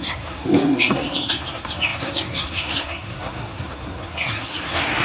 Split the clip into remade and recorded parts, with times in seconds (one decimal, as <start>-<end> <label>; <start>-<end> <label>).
0.0-5.0 remade